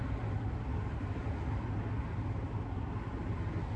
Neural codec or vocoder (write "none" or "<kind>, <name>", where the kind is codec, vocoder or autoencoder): none